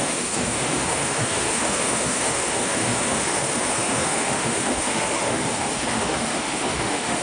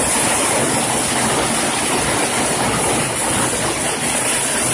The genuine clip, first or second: second